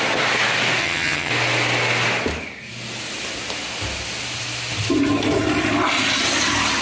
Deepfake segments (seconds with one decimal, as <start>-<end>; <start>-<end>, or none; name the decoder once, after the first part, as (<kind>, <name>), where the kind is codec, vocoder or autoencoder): 0.8-1.3 (vocoder, HiFi-GAN)